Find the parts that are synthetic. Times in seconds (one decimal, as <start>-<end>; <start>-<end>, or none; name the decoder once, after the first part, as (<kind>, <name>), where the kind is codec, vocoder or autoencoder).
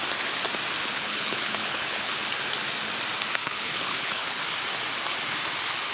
0.8-2.3 (codec, HILCodec); 3.4-4.4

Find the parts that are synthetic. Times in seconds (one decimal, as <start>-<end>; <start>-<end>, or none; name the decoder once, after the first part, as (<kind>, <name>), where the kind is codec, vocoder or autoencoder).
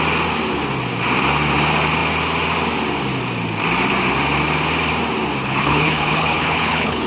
5.4-7.1 (codec, HILCodec)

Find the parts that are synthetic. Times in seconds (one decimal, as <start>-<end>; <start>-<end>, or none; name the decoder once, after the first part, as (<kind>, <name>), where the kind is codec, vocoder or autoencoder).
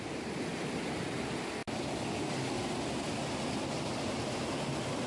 none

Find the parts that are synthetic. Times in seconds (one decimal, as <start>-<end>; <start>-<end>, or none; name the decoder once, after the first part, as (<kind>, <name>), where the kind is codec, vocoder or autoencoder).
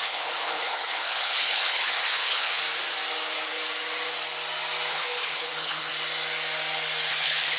0.0-2.6 (codec, HILCodec); 4.9-5.9; 7.1-7.6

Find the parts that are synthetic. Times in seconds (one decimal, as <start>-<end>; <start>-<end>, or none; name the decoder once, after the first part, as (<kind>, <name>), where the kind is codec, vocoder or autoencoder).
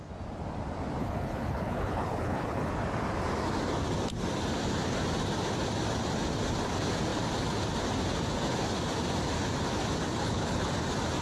1.0-2.7 (codec, HILCodec); 10.2-10.7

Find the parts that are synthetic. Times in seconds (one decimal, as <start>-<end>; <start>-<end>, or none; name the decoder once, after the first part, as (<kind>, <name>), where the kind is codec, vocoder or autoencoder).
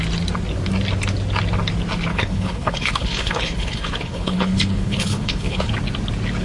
2.1-5.7 (codec, HILCodec)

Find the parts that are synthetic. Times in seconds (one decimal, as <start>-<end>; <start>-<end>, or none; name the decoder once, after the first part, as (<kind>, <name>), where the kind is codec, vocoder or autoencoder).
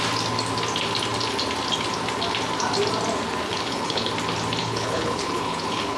3.5-4.1 (codec, HILCodec); 4.6-6.0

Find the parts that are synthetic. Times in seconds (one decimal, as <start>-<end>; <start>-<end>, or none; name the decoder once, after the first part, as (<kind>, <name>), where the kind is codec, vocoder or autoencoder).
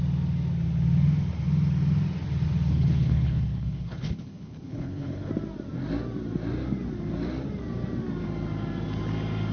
2.7-5.3 (codec, HILCodec)